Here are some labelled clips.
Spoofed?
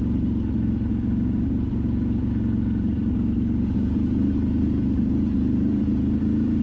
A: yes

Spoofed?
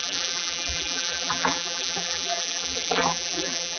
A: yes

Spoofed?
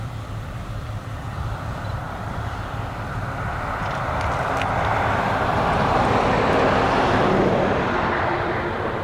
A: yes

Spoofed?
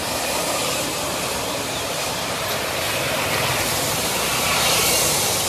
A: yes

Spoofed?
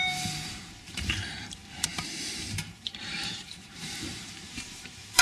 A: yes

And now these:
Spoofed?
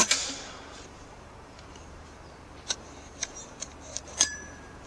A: yes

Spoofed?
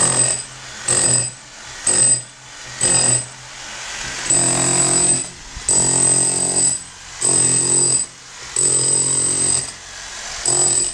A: no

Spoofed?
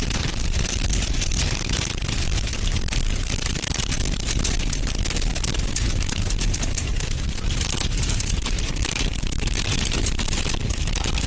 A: yes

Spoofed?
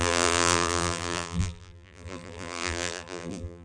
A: yes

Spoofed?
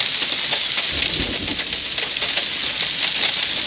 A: no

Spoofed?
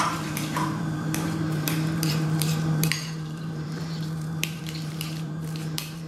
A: yes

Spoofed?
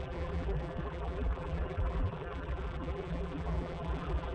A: yes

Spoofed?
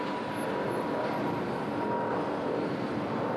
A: no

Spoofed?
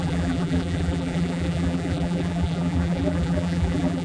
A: yes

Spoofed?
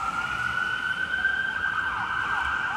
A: no